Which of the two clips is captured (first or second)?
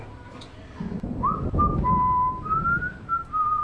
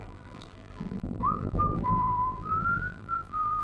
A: first